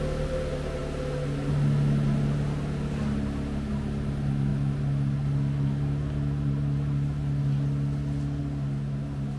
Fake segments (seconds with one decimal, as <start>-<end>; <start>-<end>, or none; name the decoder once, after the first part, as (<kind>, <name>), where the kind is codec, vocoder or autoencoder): none